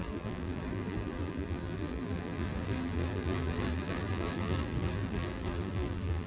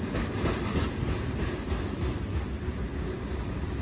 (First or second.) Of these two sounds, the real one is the second